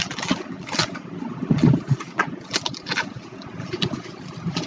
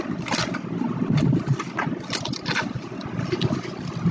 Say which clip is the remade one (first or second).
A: first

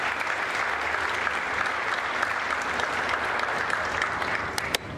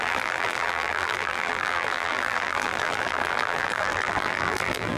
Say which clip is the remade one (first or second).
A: second